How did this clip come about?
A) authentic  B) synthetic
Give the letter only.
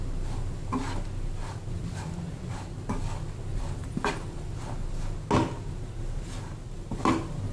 A